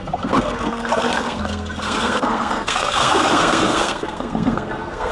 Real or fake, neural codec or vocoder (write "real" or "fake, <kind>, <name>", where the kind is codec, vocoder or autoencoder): fake, codec, SNAC